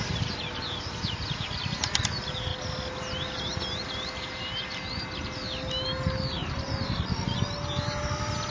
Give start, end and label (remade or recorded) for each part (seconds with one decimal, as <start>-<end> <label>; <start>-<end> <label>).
0.0-6.4 recorded; 6.4-7.0 remade; 7.0-8.5 recorded